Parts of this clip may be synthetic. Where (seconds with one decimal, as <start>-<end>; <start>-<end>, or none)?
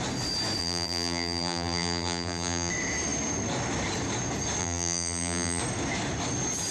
0.6-2.7; 4.6-5.6